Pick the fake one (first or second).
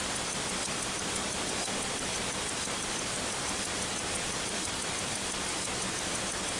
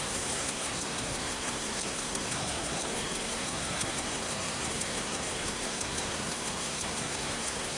second